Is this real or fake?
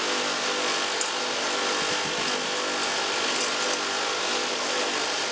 real